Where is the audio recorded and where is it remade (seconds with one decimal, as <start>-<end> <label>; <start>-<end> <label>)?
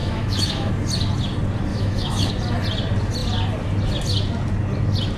0.0-0.7 remade; 0.7-1.7 recorded; 1.7-2.3 remade; 2.3-5.2 recorded